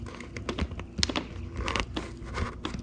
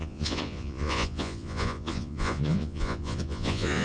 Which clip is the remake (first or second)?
second